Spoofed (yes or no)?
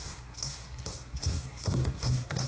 yes